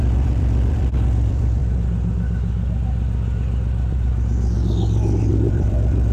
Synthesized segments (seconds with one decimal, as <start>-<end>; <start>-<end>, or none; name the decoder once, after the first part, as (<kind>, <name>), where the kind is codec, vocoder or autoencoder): 0.0-1.6 (vocoder, BigVGAN v2); 5.3-6.1

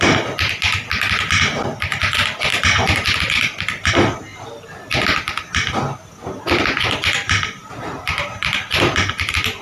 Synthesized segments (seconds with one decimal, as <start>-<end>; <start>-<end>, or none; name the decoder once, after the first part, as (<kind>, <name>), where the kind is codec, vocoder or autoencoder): 7.6-9.1 (vocoder, BigVGAN v2)

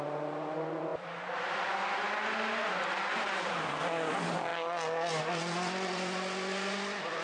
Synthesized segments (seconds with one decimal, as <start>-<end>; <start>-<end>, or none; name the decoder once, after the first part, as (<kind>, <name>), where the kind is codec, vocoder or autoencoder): none

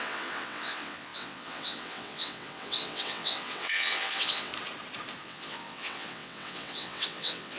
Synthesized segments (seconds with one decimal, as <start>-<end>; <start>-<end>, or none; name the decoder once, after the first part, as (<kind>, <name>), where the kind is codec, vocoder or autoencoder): 0.0-4.5 (vocoder, WaveNeXt); 5.2-7.6

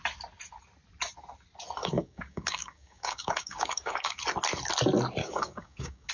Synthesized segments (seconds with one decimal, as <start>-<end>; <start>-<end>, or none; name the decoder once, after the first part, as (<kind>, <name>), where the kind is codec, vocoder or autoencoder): 1.8-4.2 (codec, DAC); 5.2-6.1